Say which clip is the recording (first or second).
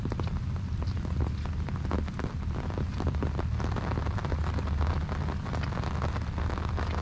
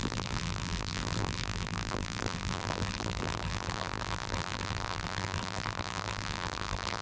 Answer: first